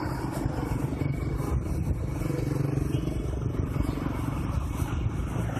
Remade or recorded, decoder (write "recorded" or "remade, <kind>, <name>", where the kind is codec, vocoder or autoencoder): recorded